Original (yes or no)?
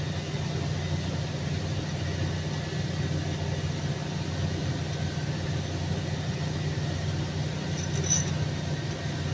yes